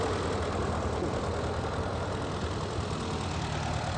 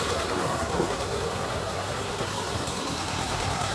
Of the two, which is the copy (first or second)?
second